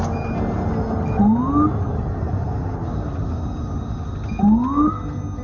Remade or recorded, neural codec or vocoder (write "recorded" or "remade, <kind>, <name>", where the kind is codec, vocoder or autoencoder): recorded